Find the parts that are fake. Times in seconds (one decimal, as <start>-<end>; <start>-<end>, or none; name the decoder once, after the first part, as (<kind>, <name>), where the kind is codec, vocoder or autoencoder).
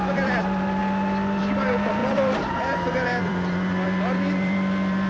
0.0-0.8 (vocoder, BigVGAN v2); 1.4-5.1